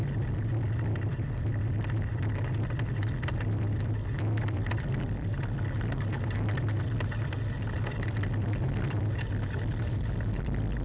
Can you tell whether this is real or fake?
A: fake